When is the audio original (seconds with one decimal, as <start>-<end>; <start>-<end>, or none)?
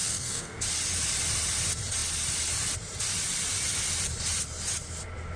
0.6-5.4